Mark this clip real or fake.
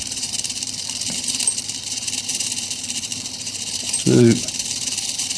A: fake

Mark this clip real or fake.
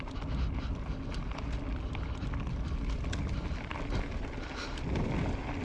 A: real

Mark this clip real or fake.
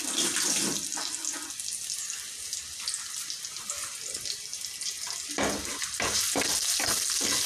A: real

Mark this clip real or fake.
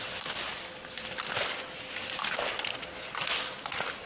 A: real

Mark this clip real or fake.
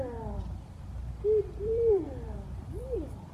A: fake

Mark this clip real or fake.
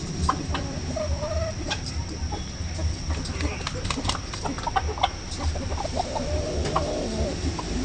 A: real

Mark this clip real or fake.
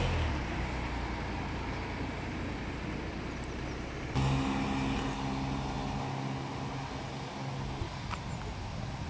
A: real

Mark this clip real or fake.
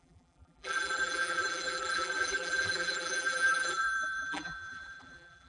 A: fake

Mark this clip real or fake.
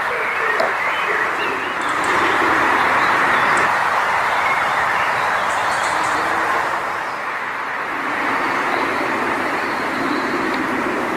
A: fake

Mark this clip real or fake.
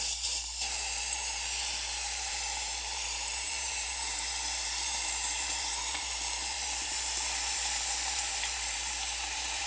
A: fake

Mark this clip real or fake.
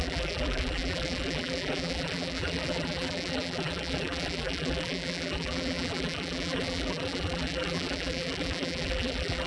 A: fake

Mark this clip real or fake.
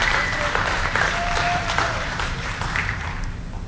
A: fake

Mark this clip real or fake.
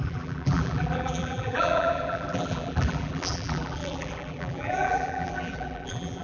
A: fake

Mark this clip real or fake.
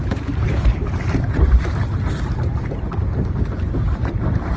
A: fake